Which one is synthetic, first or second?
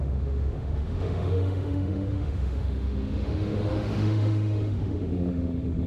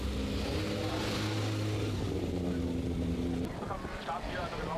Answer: first